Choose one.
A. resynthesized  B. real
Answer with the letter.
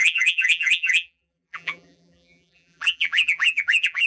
A